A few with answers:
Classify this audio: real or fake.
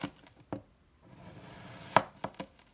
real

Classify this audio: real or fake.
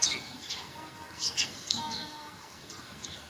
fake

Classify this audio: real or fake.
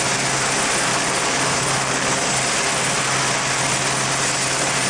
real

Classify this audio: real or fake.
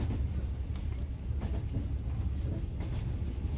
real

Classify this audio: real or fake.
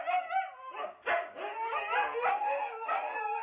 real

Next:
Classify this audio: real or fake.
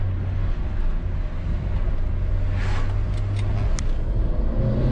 real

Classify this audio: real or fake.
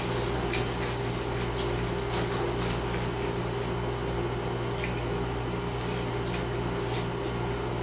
real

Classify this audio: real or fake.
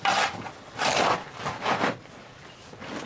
real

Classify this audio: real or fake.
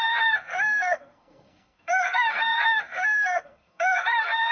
fake